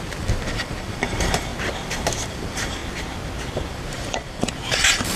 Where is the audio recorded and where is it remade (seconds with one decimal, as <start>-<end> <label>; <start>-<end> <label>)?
0.0-1.5 remade; 1.5-2.3 recorded; 2.3-2.8 remade; 2.8-3.7 recorded; 3.7-5.2 remade